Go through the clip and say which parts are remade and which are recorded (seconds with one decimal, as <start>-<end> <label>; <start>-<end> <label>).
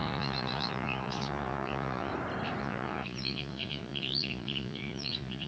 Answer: 0.0-2.1 remade; 2.1-2.6 recorded; 2.6-5.5 remade